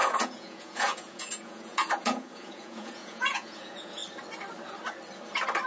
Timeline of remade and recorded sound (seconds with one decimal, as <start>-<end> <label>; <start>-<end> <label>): 0.0-4.0 remade; 4.0-5.7 recorded